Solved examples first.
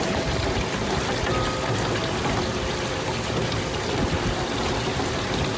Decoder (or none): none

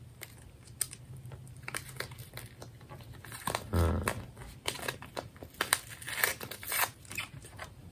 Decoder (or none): none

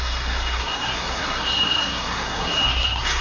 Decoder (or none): codec, SNAC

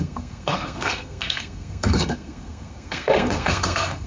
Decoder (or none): codec, SNAC